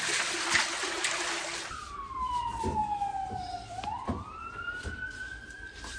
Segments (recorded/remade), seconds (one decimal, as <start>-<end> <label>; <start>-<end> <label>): 0.0-2.8 remade; 2.8-3.4 recorded; 3.4-6.0 remade